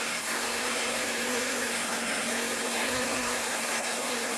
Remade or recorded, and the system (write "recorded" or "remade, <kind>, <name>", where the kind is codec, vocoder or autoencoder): remade, codec, SNAC